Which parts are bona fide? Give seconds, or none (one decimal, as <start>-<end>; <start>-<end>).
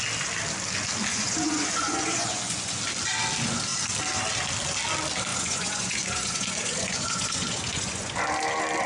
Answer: 0.0-1.1; 2.8-5.3; 8.1-8.9